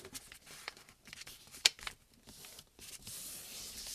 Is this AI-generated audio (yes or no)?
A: yes